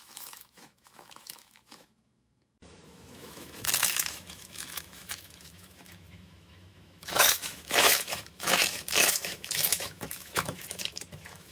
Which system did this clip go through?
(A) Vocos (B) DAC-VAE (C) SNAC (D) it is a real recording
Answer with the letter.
B